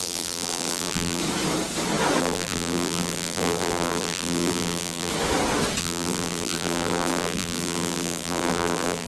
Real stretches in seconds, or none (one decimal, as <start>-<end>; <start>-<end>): 1.2-2.2; 5.1-5.8